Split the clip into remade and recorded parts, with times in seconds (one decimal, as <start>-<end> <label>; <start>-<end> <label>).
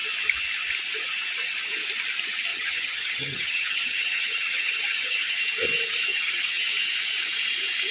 0.0-2.5 recorded; 2.5-5.4 remade; 5.4-6.1 recorded; 6.1-6.6 remade; 6.6-7.9 recorded